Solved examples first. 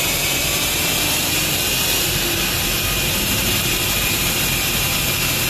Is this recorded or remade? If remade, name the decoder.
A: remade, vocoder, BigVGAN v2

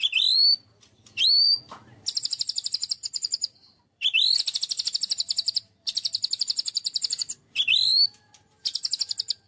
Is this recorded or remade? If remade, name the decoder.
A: remade, vocoder, BigVGAN v2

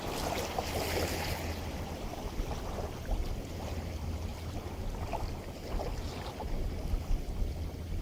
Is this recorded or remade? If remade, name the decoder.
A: recorded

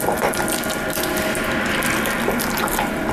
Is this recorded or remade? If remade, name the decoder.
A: recorded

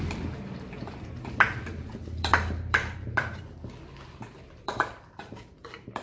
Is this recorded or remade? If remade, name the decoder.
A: remade, vocoder, BigVGAN v2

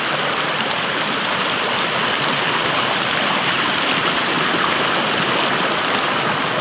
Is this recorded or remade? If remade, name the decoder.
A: remade, vocoder, BigVGAN v2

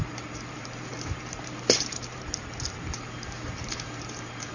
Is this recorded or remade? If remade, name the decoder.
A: remade, vocoder, BigVGAN v2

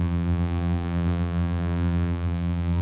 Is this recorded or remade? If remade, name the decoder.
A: remade, vocoder, BigVGAN v2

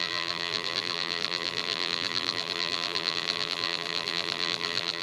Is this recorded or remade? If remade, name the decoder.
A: remade, vocoder, BigVGAN v2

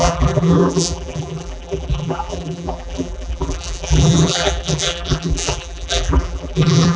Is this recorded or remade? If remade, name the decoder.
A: remade, vocoder, BigVGAN v2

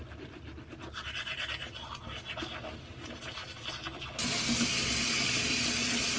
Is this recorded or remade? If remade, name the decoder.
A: recorded